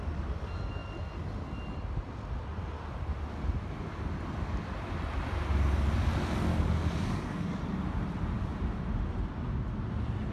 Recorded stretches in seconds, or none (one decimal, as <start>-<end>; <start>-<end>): 0.0-6.5; 7.6-10.3